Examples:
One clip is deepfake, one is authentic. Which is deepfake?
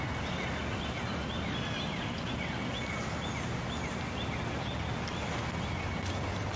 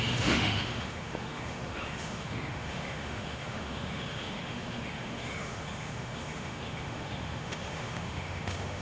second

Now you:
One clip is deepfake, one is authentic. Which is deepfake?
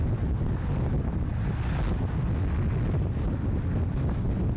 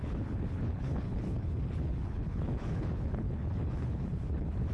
second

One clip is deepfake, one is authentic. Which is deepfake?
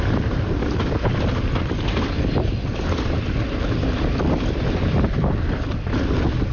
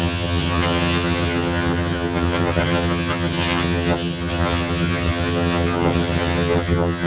second